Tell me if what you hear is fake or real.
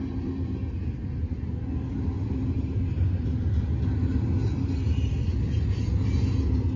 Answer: real